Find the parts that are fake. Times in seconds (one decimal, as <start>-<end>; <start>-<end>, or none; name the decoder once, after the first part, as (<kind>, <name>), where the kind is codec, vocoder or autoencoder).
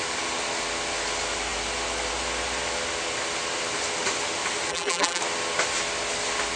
4.7-5.2 (vocoder, BigVGAN v2)